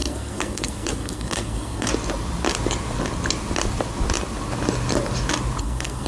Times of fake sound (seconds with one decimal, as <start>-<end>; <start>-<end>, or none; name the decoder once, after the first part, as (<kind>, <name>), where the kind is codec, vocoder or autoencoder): 0.0-1.9 (codec, SNAC); 5.6-6.1